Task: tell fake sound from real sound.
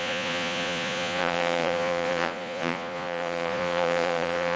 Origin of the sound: fake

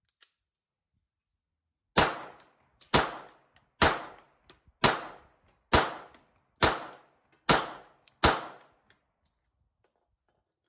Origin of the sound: real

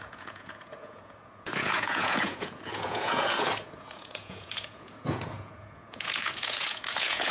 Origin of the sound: fake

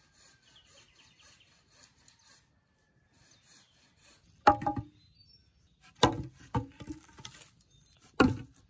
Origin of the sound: real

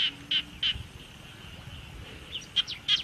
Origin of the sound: real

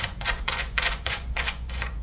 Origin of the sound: fake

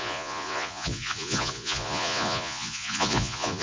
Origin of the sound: fake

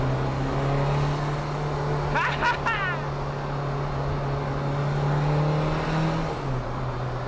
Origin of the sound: real